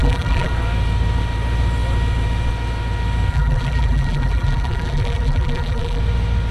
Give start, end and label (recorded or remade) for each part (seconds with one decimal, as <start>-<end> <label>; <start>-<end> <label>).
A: 0.0-0.5 remade; 0.5-3.3 recorded; 3.3-6.0 remade; 6.0-6.5 recorded